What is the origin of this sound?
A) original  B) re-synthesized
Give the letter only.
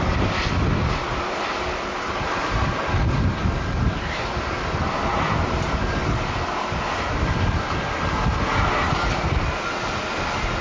A